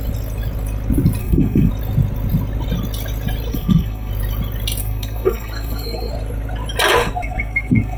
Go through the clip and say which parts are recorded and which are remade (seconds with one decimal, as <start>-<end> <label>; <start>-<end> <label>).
0.0-1.2 recorded; 1.2-1.7 remade; 1.7-3.5 recorded; 3.5-4.1 remade; 4.1-4.8 recorded; 4.8-6.1 remade; 6.1-7.0 recorded; 7.0-8.0 remade